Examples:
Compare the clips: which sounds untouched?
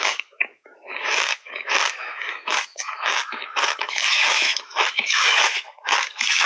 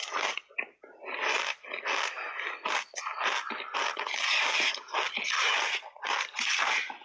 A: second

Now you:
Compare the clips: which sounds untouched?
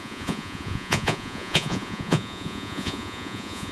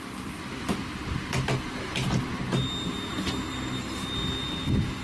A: second